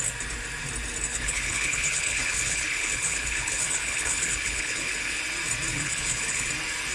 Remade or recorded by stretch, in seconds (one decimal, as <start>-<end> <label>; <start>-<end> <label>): 0.0-1.1 recorded; 1.1-5.2 remade; 5.2-5.7 recorded; 5.7-6.5 remade; 6.5-6.9 recorded